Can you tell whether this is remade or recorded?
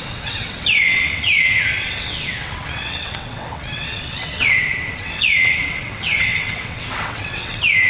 remade